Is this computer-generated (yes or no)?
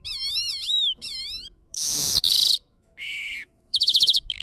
yes